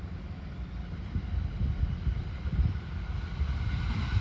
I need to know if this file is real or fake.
real